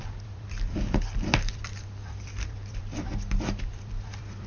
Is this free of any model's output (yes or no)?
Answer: no